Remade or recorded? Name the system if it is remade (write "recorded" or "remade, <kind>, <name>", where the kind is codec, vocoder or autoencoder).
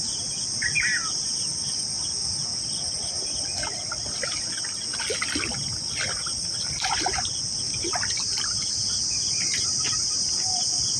recorded